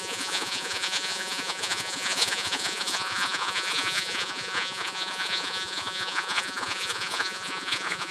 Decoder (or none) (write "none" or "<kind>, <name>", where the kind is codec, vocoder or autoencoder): vocoder, Vocos